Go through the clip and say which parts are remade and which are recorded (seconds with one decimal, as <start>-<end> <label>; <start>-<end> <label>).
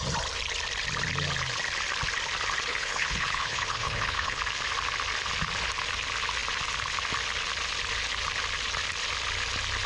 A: 0.0-2.7 recorded; 2.7-4.4 remade; 4.4-9.9 recorded